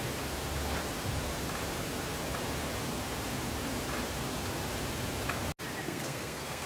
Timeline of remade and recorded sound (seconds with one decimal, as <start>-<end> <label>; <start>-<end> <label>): 0.0-5.8 recorded; 5.8-6.7 remade